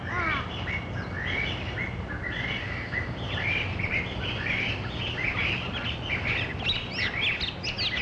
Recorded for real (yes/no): yes